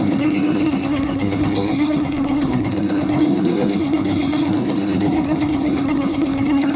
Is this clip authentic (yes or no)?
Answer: no